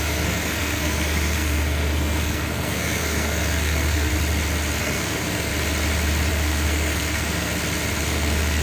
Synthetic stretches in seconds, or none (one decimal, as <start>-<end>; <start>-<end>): 0.0-4.1; 4.8-5.5; 6.3-7.5; 8.0-8.6